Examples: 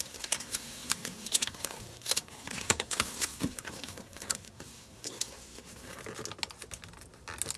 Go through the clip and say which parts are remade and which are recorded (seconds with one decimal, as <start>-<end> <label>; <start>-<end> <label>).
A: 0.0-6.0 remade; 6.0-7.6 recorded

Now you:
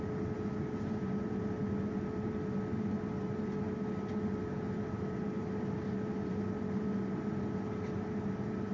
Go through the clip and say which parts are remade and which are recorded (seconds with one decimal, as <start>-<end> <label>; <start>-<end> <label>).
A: 0.0-8.7 recorded

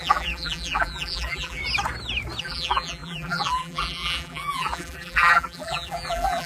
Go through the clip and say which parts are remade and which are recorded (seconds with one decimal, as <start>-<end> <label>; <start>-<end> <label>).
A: 0.0-1.6 remade; 1.6-2.4 recorded; 2.4-6.5 remade